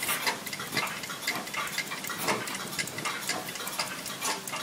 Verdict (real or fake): real